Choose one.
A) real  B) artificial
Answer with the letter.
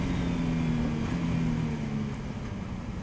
A